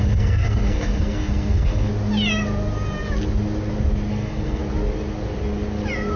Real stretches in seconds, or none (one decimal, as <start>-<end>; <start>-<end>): 1.9-4.1; 4.6-6.2